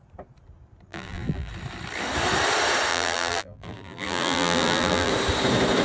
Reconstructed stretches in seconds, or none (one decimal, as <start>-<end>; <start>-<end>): 0.9-1.5; 2.9-5.1